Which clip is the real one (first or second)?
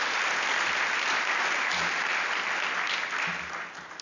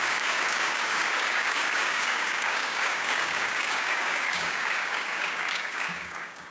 first